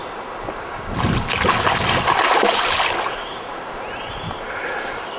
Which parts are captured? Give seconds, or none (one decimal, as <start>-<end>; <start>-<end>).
0.0-5.2